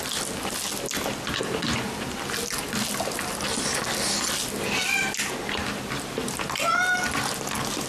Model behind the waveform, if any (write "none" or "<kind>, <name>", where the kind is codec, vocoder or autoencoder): none